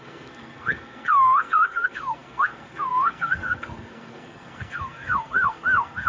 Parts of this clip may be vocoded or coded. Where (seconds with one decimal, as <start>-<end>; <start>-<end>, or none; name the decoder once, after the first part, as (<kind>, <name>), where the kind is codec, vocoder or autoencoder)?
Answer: 0.0-6.1 (codec, SNAC)